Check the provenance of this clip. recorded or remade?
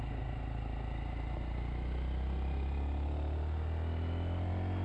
recorded